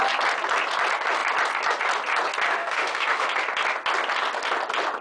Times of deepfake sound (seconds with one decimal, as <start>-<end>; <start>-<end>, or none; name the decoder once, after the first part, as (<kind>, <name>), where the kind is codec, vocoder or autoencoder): 2.6-3.3 (autoencoder, DAC-VAE)